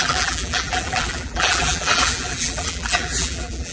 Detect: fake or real fake